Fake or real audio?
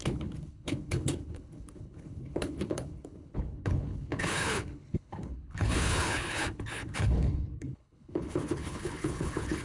fake